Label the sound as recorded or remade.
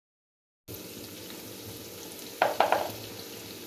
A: recorded